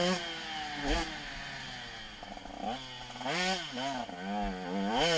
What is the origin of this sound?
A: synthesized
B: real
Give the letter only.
B